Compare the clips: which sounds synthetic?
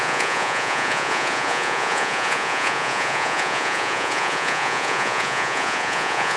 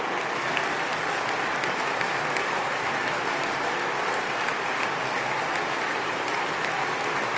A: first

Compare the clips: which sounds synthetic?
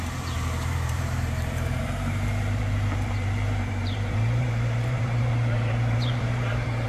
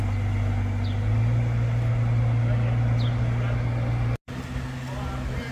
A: first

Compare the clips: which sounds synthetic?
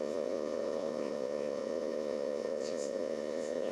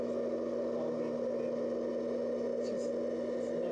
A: first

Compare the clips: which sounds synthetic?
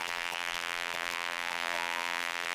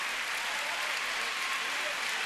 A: first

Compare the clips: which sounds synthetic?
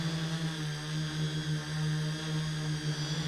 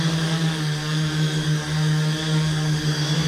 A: second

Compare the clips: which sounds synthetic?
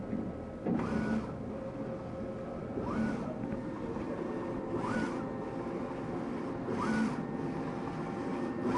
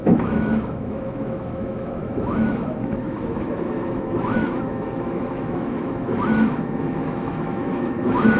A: second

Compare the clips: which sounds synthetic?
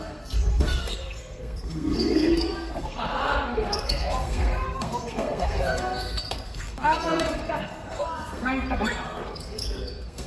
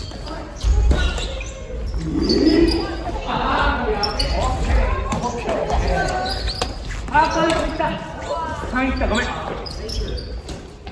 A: first